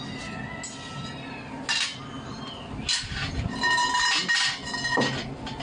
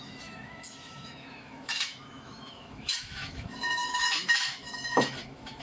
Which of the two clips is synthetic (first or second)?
second